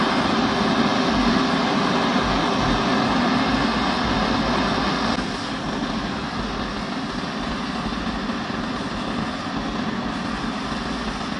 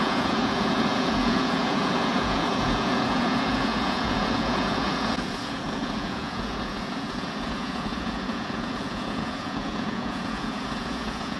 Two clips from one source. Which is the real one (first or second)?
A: first